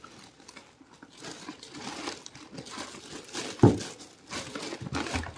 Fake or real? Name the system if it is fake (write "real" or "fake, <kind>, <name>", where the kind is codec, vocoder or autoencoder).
real